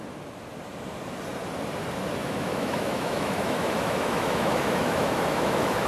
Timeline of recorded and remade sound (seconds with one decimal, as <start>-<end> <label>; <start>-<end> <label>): 0.0-2.2 recorded; 2.2-5.9 remade